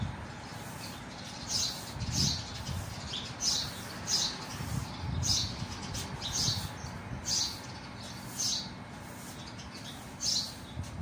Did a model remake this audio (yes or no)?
no